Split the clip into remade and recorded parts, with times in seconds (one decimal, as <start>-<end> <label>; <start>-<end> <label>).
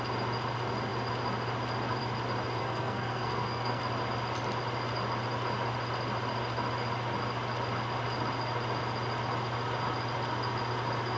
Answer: 0.0-2.6 recorded; 2.6-3.8 remade; 3.8-11.2 recorded